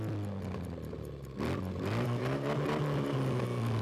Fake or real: real